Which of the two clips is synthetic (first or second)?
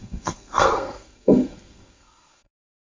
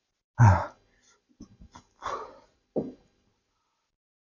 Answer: first